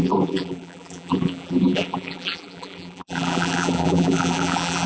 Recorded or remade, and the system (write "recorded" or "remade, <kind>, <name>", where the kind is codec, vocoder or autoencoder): remade, vocoder, BigVGAN v2